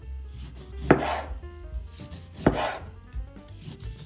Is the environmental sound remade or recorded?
recorded